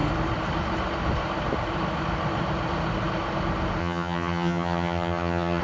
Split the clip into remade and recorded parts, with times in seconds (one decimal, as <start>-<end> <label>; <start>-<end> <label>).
0.0-3.8 recorded; 3.8-5.6 remade